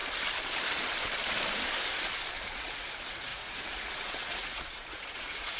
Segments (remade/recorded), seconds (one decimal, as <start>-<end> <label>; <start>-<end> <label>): 0.0-2.4 recorded; 2.4-5.6 remade